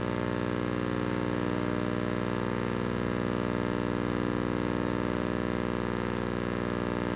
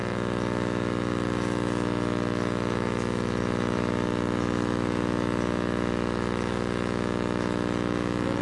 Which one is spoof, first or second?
second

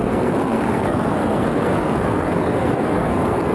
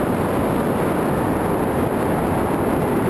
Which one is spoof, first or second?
first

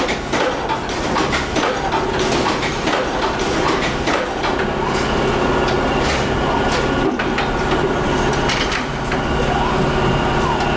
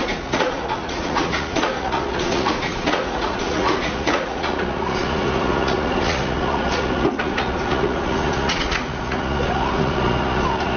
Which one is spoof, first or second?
second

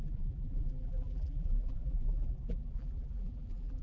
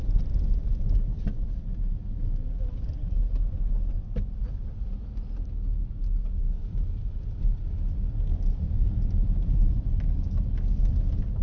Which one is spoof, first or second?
first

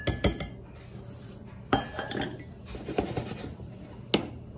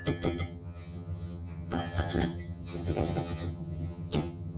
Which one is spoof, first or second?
second